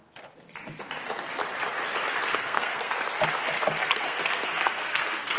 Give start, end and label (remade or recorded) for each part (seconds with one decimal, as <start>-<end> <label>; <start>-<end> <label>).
0.0-2.3 recorded; 2.3-2.9 remade; 2.9-3.8 recorded; 3.8-5.4 remade

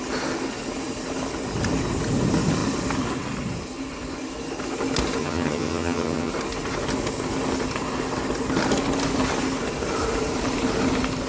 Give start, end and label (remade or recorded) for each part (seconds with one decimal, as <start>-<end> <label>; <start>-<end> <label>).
0.0-5.2 recorded; 5.2-6.3 remade; 6.3-11.3 recorded

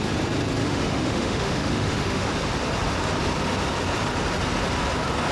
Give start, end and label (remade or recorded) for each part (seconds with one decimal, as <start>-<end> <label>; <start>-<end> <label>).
0.0-0.6 recorded; 0.6-2.3 remade; 2.3-5.3 recorded

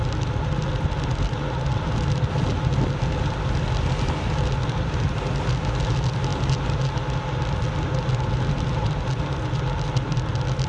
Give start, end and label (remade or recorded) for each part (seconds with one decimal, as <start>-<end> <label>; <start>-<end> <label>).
0.0-10.7 recorded